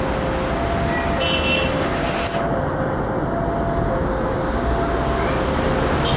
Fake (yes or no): no